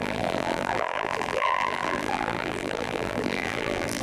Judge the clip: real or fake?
fake